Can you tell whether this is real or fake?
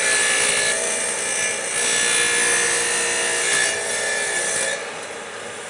real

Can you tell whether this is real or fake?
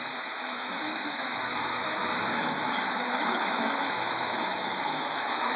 fake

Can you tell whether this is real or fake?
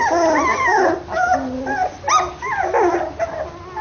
real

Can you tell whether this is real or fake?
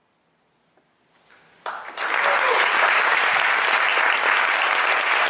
real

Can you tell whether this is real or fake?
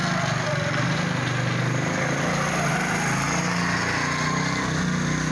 real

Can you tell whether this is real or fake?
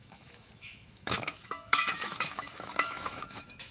fake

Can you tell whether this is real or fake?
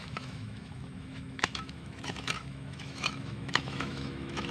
fake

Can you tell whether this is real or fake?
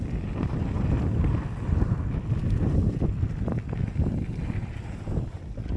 real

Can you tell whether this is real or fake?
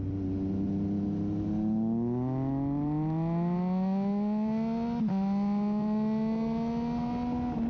real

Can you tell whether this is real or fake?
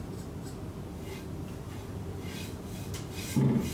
real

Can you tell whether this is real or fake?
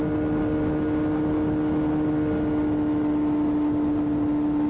real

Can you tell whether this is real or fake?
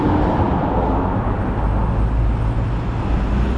real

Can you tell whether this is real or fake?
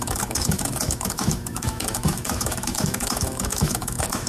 fake